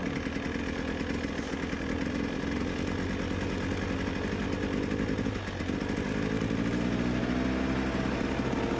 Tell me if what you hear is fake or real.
real